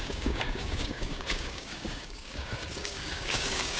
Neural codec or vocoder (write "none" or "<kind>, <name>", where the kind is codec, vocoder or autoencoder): codec, DAC